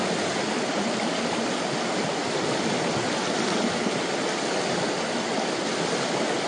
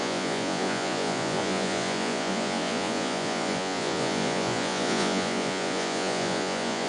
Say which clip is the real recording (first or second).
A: first